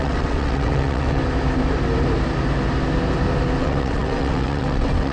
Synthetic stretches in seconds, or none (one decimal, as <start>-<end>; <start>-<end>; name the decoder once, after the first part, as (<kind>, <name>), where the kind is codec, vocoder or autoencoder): 0.0-1.2 (vocoder, WaveNeXt); 3.6-5.1